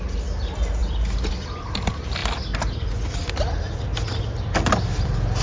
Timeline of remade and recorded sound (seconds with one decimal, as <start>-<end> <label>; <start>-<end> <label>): 0.0-5.4 recorded